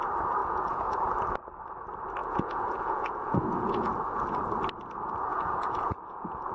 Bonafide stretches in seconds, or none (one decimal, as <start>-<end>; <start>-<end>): 0.0-0.4; 1.0-2.2; 3.9-5.3